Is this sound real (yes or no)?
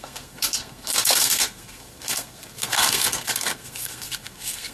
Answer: no